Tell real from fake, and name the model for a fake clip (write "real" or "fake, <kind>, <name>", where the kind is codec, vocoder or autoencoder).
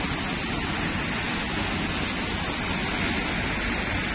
real